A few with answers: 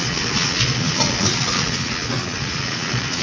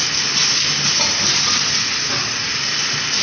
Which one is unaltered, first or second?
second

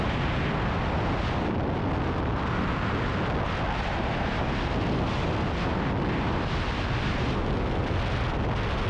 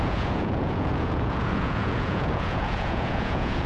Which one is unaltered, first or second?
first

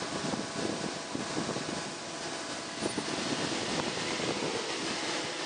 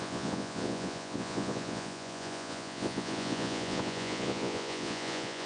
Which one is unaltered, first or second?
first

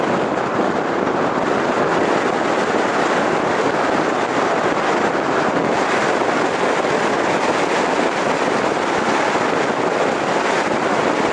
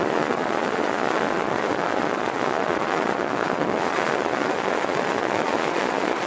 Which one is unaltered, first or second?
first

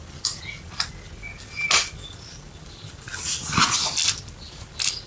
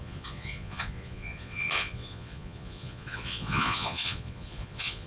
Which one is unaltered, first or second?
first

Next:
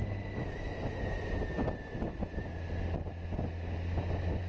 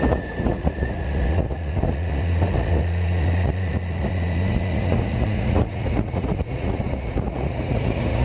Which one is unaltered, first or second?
first